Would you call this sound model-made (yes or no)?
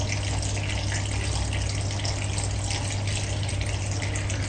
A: no